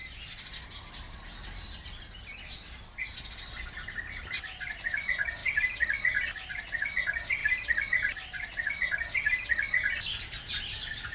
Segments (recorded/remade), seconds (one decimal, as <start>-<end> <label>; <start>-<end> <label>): 0.0-11.1 recorded